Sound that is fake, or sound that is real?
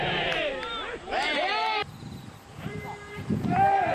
fake